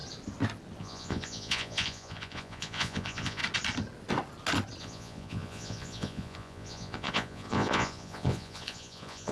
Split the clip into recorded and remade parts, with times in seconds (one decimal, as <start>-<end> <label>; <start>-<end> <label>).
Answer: 0.0-0.8 recorded; 0.8-3.4 remade; 3.4-4.8 recorded; 4.8-9.3 remade

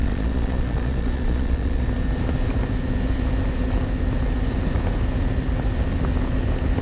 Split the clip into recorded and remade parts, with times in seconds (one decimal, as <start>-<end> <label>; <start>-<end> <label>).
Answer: 0.0-1.8 remade; 1.8-6.8 recorded

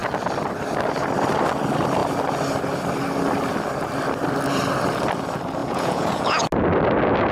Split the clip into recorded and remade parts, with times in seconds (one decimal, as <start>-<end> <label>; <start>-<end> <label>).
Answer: 0.0-5.6 recorded; 5.6-6.4 remade; 6.4-7.3 recorded

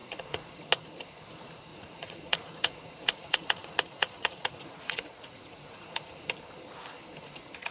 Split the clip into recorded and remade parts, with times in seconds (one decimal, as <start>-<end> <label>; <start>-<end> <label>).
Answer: 0.0-0.7 remade; 0.7-1.7 recorded; 1.7-6.3 remade; 6.3-7.7 recorded

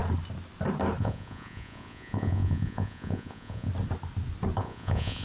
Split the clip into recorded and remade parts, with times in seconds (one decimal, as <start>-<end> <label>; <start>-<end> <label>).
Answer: 0.0-1.0 recorded; 1.0-3.7 remade; 3.7-4.6 recorded; 4.6-5.2 remade

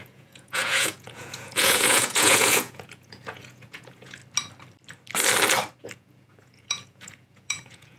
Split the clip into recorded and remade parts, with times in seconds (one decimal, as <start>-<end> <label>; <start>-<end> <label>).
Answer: 0.0-4.2 remade; 4.2-5.8 recorded; 5.8-8.0 remade

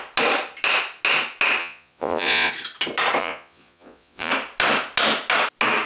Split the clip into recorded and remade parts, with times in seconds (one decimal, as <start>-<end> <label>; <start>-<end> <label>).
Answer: 0.0-1.6 recorded; 1.6-2.5 remade; 2.5-3.2 recorded; 3.2-4.3 remade; 4.3-5.9 recorded

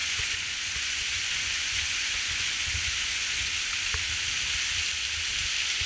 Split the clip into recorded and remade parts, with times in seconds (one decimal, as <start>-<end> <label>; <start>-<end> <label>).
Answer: 0.0-3.5 remade; 3.5-5.9 recorded